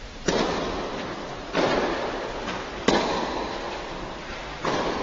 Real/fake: fake